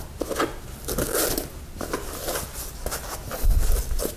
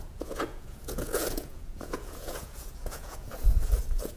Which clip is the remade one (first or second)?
second